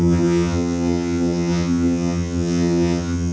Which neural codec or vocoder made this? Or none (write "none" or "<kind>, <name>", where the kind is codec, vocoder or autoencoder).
vocoder, HiFi-GAN